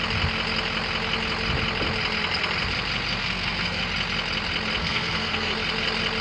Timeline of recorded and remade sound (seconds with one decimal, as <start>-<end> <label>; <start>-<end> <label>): 0.0-3.2 recorded; 3.2-3.8 remade; 3.8-4.8 recorded; 4.8-5.5 remade; 5.5-6.2 recorded